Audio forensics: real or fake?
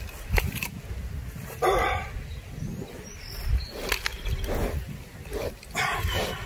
real